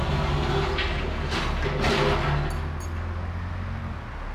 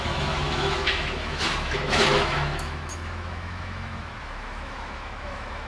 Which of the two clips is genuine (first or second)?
first